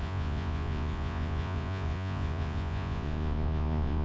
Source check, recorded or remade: remade